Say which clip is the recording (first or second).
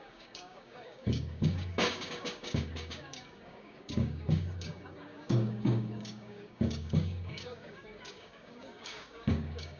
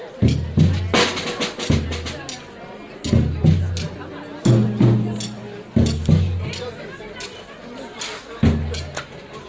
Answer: second